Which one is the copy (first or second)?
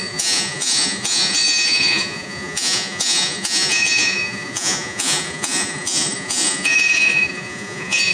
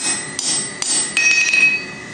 first